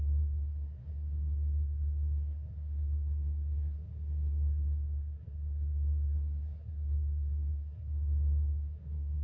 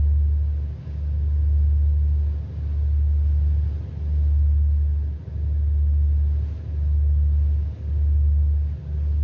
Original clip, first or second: second